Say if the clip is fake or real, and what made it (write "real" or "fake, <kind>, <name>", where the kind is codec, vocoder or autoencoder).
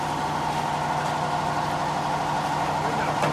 real